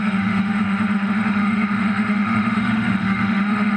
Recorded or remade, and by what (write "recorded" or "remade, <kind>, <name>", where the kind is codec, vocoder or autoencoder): remade, autoencoder, DAC-VAE